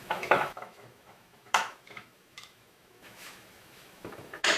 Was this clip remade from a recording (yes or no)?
yes